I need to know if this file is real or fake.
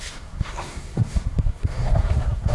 fake